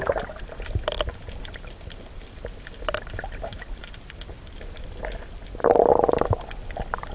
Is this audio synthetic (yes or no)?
no